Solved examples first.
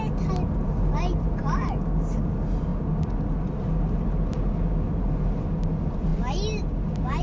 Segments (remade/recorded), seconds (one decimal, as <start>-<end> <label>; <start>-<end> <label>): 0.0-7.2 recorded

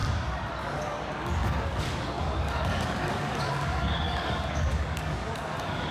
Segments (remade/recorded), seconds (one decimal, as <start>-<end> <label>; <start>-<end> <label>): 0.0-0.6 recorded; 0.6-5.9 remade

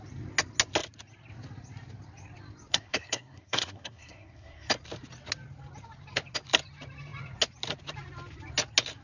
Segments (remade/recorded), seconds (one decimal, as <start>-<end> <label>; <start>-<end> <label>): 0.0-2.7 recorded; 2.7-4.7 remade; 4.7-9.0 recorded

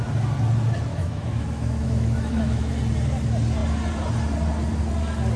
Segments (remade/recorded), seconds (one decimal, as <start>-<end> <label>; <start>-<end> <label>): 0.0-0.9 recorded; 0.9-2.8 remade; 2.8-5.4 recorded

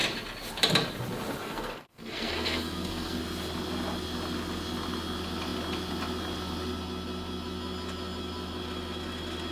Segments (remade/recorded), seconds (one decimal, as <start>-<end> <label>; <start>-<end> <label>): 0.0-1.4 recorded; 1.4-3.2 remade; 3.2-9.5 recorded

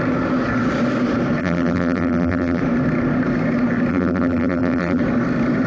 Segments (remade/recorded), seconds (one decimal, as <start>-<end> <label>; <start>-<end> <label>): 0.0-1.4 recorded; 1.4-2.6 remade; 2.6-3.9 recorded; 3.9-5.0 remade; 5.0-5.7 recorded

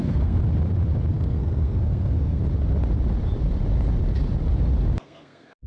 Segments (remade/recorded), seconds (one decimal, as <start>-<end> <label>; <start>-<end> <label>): 0.0-0.4 remade; 0.4-1.1 recorded; 1.1-2.4 remade; 2.4-5.0 recorded; 5.0-5.7 remade

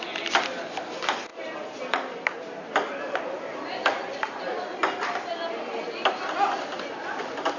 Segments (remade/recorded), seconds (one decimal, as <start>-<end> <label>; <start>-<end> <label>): 0.0-7.6 recorded